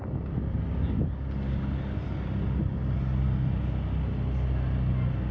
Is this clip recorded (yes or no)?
yes